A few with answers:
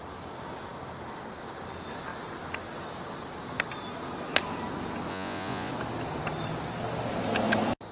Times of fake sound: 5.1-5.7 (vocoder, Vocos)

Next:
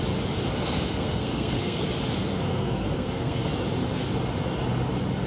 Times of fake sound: 0.5-1.9 (codec, SNAC); 2.3-3.5